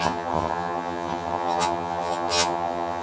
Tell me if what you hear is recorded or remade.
remade